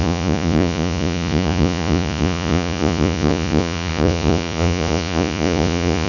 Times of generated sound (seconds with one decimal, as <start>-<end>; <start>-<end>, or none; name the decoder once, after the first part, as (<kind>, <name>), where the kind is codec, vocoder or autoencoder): 0.0-6.1 (vocoder, Vocos)